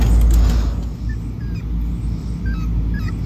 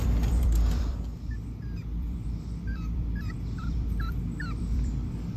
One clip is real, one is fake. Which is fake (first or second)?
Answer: second